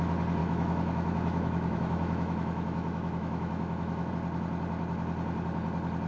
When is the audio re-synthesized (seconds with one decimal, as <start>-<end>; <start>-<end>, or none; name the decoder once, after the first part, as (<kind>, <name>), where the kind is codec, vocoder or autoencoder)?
0.4-4.1 (autoencoder, DAC-VAE)